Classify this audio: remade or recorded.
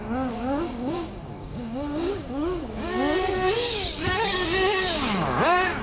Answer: remade